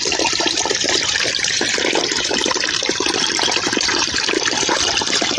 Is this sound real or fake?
fake